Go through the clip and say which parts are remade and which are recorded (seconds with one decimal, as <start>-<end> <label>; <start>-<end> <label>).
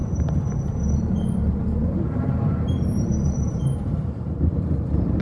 0.0-5.2 remade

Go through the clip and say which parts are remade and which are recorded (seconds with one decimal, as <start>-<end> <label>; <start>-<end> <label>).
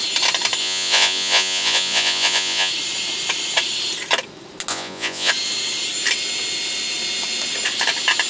0.0-0.6 recorded; 0.6-2.7 remade; 2.7-4.7 recorded; 4.7-5.3 remade; 5.3-8.3 recorded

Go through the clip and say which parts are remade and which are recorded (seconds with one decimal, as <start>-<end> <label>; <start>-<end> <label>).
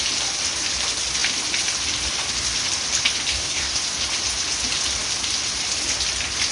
0.0-3.3 recorded; 3.3-3.8 remade; 3.8-6.5 recorded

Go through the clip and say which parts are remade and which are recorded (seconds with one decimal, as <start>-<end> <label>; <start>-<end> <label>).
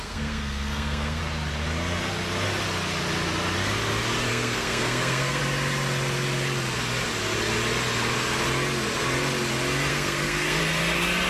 0.0-1.2 remade; 1.2-4.3 recorded; 4.3-5.4 remade; 5.4-9.9 recorded; 9.9-10.6 remade; 10.6-11.3 recorded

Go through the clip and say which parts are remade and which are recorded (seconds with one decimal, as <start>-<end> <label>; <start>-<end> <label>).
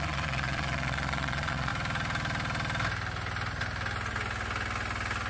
0.0-1.7 remade; 1.7-5.3 recorded